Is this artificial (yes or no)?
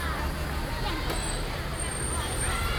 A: no